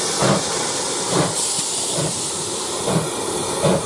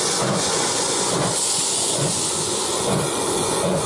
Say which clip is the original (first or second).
first